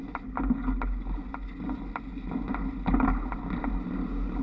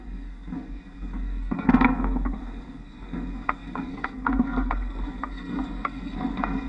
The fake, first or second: second